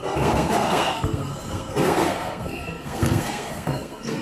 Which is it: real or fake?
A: fake